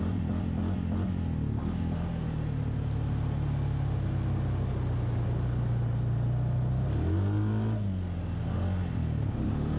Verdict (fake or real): real